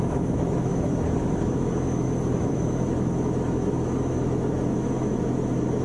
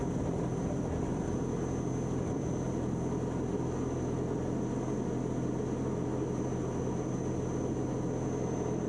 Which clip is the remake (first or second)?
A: first